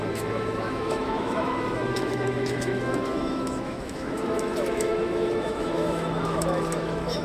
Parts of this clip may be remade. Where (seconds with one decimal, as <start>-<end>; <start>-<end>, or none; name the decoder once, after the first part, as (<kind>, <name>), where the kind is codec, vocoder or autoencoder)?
0.0-7.2 (autoencoder, DAC-VAE)